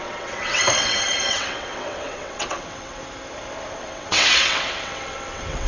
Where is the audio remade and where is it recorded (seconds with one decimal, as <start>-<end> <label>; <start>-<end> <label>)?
0.0-3.0 remade; 3.0-3.7 recorded; 3.7-5.7 remade